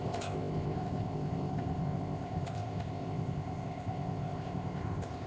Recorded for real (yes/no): no